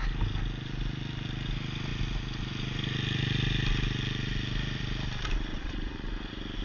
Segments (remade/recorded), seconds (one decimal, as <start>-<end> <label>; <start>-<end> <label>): 0.0-5.5 recorded; 5.5-6.1 remade; 6.1-6.6 recorded

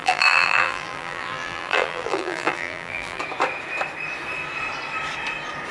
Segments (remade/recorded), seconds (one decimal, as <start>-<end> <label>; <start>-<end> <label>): 0.0-3.2 remade; 3.2-5.7 recorded

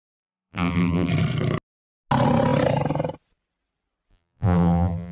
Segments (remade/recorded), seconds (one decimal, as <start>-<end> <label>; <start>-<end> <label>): 0.0-1.1 remade; 1.1-4.1 recorded; 4.1-5.1 remade

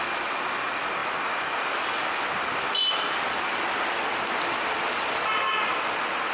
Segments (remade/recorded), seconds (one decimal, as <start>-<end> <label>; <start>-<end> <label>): 0.0-6.3 recorded

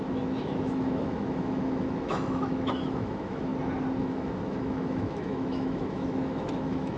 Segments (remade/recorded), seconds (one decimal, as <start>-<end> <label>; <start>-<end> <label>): 0.0-3.5 remade; 3.5-4.0 recorded; 4.0-7.0 remade

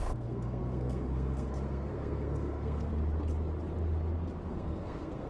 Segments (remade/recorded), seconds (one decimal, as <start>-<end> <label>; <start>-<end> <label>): 0.0-2.9 remade; 2.9-4.5 recorded; 4.5-5.3 remade

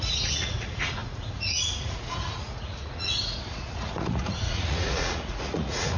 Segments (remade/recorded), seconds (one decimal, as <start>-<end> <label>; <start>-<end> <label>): 0.0-6.0 remade